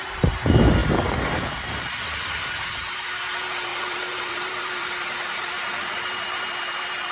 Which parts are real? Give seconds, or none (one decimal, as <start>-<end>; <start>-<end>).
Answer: none